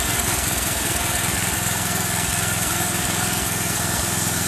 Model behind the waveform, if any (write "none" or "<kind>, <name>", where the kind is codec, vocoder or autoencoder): codec, SNAC